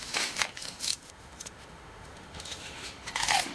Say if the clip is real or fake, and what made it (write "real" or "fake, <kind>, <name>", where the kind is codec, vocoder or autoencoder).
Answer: fake, autoencoder, DAC-VAE